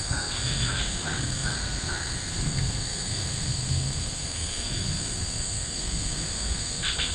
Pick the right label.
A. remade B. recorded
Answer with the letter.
A